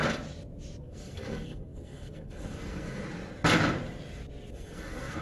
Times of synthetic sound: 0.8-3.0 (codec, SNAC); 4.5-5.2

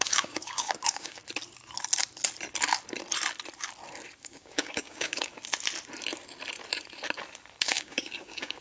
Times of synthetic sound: 0.0-1.2 (codec, DAC); 4.2-5.3; 7.6-8.6

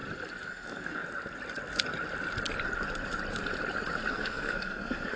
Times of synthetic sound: 0.5-1.0 (codec, SNAC); 4.1-5.2

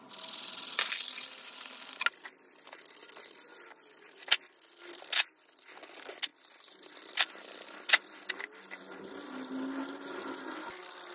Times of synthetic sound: none

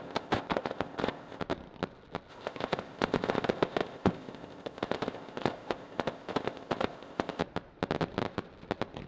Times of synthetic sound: 0.0-1.4 (codec, ZipCodec); 2.3-7.4

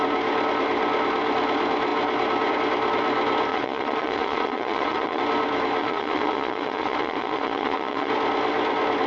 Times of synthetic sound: 3.5-5.2 (vocoder, Vocos); 5.8-8.1

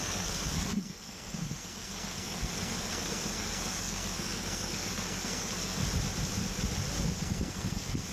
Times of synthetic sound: 0.0-5.8 (codec, SNAC); 7.0-8.1

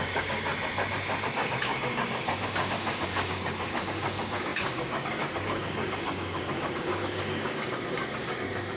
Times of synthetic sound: 0.0-0.5 (codec, DAC); 1.3-8.8